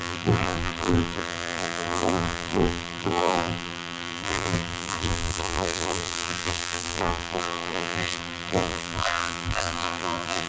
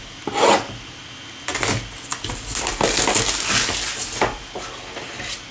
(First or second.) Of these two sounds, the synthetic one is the first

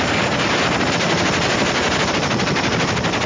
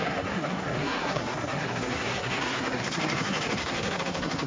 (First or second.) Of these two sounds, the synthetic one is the second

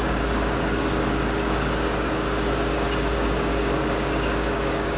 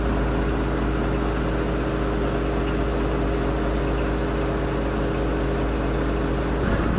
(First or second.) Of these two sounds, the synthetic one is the first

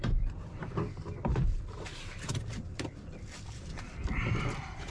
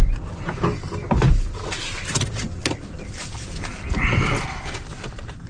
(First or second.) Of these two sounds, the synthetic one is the first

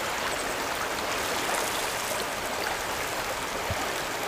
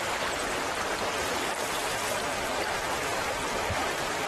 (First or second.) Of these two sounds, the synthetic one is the second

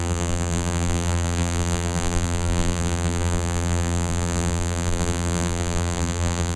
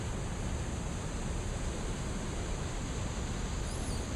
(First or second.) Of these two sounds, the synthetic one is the first